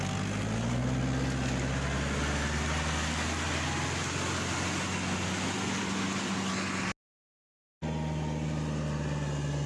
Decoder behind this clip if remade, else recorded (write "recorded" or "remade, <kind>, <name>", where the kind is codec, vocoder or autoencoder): recorded